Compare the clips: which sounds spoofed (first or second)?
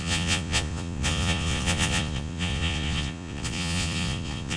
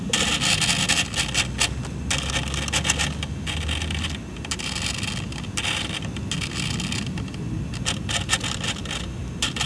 first